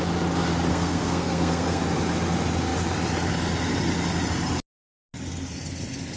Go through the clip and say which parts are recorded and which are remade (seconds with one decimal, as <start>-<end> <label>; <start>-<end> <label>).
0.0-0.7 recorded; 0.7-1.8 remade; 1.8-6.2 recorded

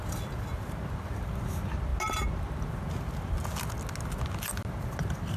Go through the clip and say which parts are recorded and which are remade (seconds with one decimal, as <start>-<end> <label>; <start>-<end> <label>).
0.0-5.4 recorded

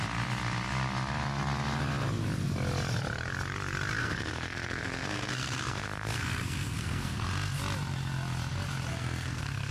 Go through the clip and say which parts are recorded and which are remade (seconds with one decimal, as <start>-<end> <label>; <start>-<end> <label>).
0.0-4.0 recorded; 4.0-7.6 remade; 7.6-8.9 recorded; 8.9-9.7 remade

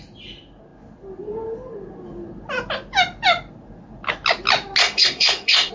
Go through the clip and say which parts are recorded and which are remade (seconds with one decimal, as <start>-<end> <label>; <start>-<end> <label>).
0.0-4.8 recorded; 4.8-5.7 remade